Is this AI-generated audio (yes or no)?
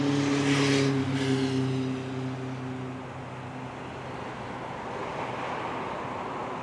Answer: no